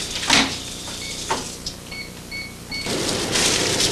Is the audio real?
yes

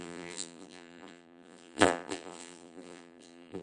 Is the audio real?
no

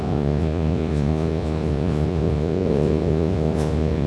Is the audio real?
no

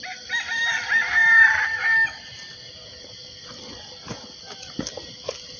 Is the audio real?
yes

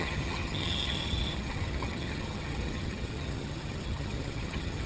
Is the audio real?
no